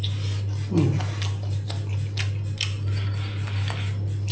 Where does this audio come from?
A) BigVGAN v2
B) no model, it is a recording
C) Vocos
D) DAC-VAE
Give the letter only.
B